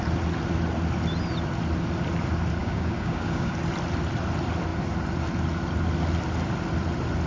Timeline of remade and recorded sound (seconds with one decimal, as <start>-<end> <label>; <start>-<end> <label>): 0.0-2.6 recorded; 2.6-3.5 remade; 3.5-7.3 recorded